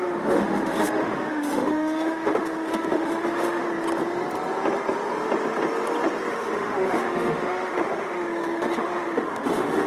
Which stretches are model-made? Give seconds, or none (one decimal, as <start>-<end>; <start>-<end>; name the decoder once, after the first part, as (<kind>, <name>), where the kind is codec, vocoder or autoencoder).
0.0-3.6 (autoencoder, DAC-VAE); 6.3-9.9